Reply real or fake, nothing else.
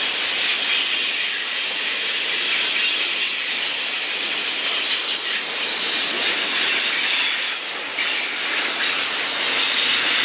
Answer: real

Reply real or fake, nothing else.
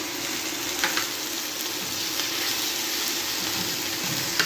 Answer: real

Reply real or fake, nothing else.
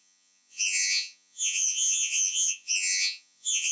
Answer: fake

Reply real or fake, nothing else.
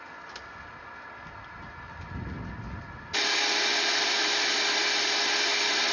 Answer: real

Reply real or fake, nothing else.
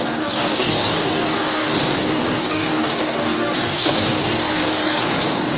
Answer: fake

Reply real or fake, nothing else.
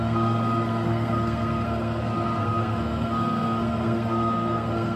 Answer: fake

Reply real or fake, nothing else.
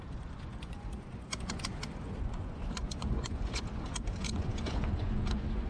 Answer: fake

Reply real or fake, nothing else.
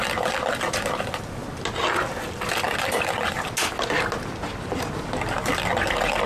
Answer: real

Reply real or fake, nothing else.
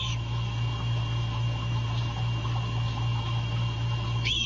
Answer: fake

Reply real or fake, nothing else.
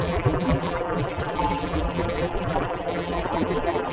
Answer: fake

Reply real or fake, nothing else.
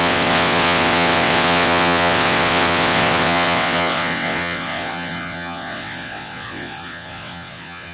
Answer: fake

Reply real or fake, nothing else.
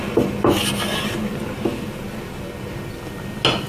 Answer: real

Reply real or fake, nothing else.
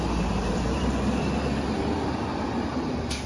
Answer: fake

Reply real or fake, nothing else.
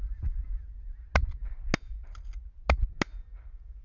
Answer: real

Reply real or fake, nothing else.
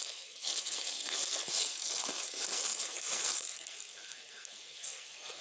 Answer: fake